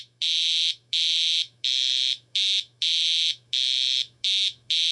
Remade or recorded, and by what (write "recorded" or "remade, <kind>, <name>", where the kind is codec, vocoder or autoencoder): remade, autoencoder, DAC-VAE